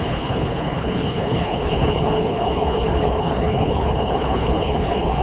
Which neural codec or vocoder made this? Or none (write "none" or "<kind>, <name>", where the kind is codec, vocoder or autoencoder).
codec, HILCodec